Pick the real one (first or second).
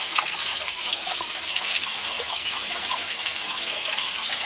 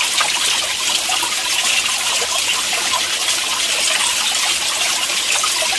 second